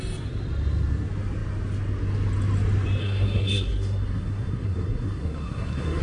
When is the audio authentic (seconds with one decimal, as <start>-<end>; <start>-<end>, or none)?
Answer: 0.0-3.0